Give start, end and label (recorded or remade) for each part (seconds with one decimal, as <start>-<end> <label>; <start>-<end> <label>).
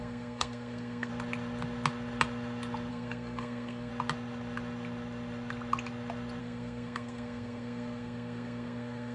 0.0-1.1 remade; 1.1-2.9 recorded; 2.9-3.9 remade; 3.9-6.4 recorded; 6.4-9.1 remade